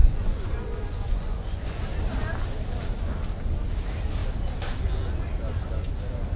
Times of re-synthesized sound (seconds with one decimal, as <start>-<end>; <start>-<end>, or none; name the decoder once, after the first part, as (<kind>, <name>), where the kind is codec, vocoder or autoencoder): 0.0-1.8 (vocoder, Vocos)